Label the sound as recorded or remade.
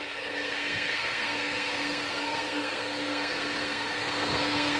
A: remade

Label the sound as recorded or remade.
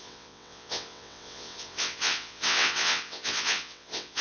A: remade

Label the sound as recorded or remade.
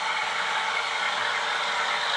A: recorded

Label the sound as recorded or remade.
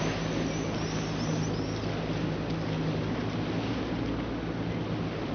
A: recorded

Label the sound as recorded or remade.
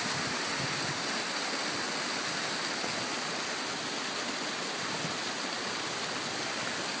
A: recorded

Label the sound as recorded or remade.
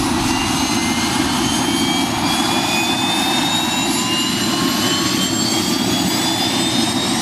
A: recorded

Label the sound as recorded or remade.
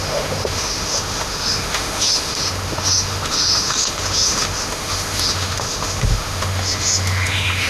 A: remade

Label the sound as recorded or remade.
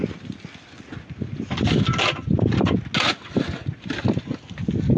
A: recorded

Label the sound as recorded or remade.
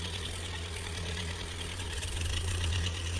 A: remade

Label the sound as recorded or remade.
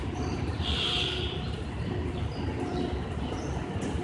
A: remade